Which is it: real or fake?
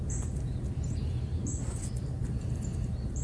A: real